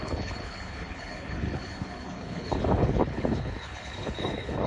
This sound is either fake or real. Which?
fake